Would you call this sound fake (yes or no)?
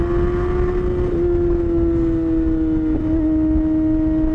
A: no